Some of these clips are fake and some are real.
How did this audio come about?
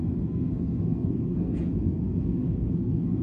fake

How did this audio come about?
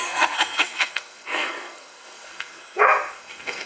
fake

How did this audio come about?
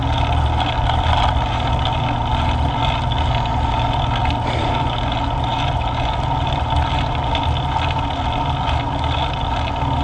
real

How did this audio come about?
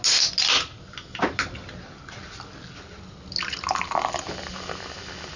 real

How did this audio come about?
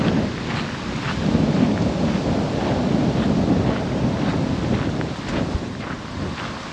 real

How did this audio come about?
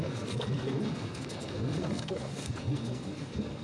fake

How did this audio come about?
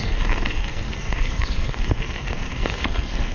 fake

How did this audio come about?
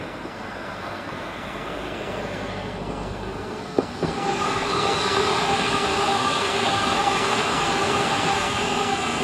fake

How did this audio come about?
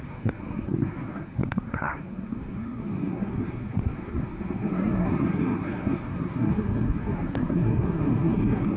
fake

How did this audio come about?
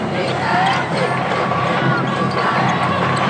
real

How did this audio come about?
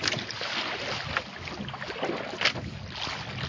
real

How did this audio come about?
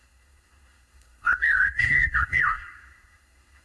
fake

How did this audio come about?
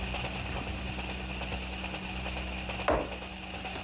real